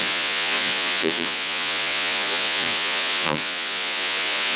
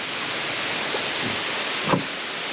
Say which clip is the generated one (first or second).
first